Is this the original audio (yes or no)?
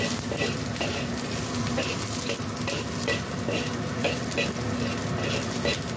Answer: yes